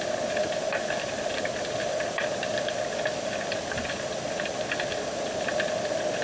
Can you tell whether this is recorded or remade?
recorded